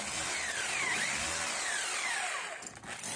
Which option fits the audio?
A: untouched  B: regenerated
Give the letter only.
A